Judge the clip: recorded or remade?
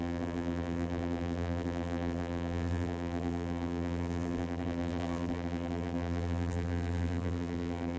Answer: remade